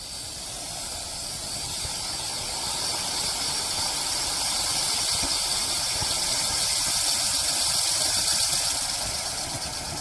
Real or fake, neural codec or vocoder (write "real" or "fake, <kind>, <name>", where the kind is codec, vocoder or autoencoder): real